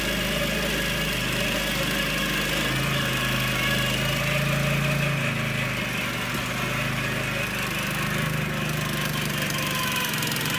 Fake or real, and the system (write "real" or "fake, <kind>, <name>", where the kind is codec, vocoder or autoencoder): real